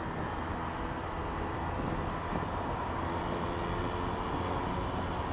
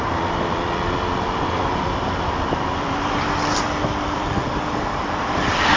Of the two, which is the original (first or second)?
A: first